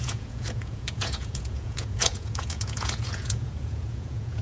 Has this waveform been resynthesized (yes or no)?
yes